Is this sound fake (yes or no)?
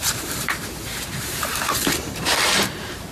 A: yes